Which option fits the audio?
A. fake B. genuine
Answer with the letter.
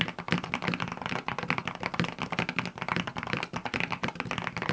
B